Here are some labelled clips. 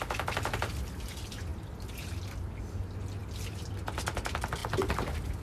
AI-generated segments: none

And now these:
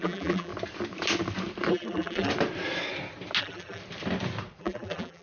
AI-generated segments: 0.0-0.5; 1.7-2.3; 3.4-3.8; 4.6-5.2

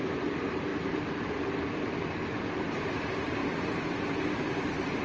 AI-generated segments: 0.0-0.7; 2.4-3.4; 4.3-5.0

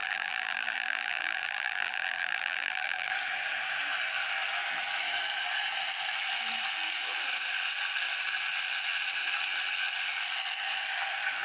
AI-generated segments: 0.0-3.1